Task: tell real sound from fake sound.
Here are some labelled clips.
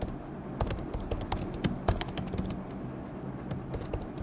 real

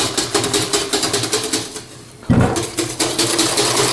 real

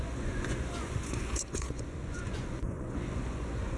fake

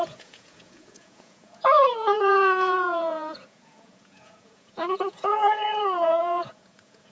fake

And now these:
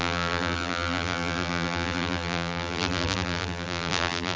fake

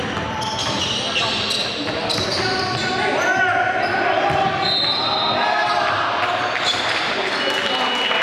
real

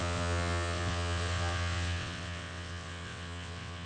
fake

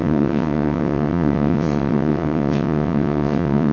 fake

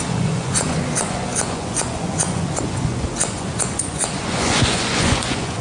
fake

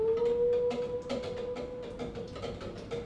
real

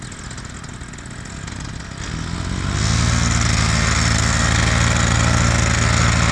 real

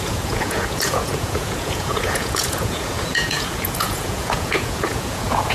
fake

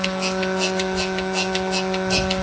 fake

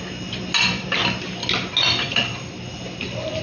real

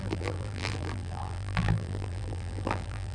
fake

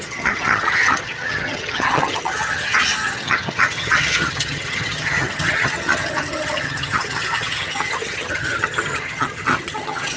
fake